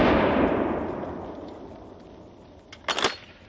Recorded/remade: recorded